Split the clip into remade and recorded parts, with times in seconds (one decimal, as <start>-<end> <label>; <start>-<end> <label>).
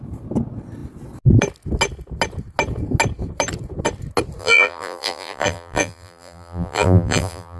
0.0-4.4 recorded; 4.4-7.6 remade